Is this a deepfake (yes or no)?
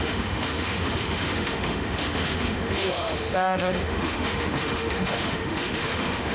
yes